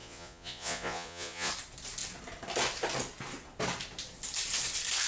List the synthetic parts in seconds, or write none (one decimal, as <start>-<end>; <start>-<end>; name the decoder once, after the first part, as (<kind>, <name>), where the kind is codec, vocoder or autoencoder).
0.0-1.5 (vocoder, Vocos)